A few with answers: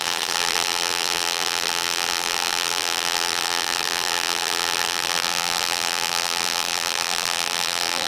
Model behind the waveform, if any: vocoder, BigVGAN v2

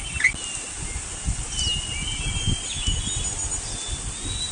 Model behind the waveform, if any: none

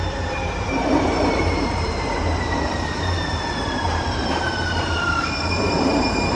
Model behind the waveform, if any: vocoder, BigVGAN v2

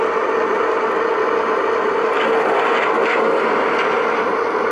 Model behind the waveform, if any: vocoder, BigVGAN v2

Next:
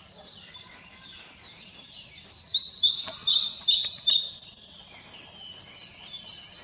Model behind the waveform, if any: vocoder, BigVGAN v2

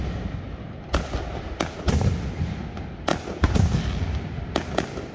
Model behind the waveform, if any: none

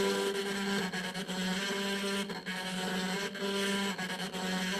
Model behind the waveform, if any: none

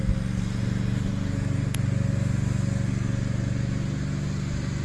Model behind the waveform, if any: none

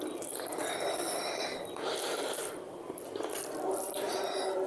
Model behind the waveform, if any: none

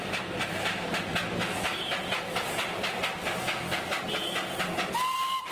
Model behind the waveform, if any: none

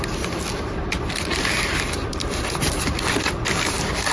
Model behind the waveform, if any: vocoder, BigVGAN v2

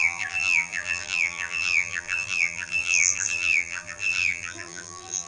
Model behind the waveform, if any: vocoder, BigVGAN v2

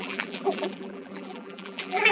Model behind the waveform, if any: vocoder, BigVGAN v2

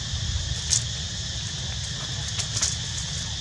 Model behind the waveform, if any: none